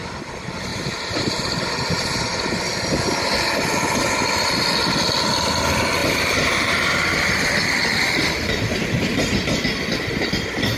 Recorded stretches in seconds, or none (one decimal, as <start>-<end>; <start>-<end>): 0.0-0.7; 1.3-6.0; 7.4-10.8